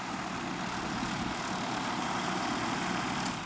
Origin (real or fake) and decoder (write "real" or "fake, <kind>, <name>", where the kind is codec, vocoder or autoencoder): real